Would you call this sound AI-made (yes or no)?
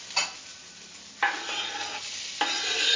no